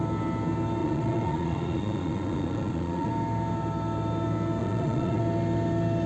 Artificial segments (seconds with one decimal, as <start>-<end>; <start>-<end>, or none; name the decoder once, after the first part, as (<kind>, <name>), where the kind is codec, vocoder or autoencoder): 0.8-3.1 (vocoder, Vocos); 4.6-5.2